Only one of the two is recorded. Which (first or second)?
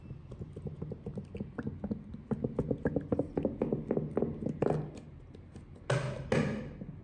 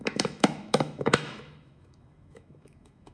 first